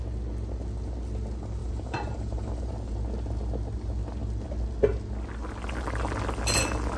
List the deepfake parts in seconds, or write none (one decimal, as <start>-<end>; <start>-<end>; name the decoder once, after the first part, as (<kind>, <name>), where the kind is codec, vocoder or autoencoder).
1.6-3.0 (vocoder, BigVGAN v2)